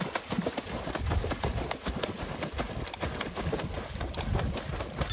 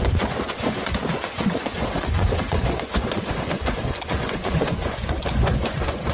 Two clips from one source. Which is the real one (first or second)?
first